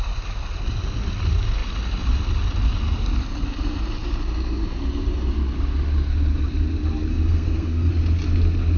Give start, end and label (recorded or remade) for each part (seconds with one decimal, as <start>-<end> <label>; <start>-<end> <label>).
0.0-7.1 recorded; 7.1-7.9 remade; 7.9-8.8 recorded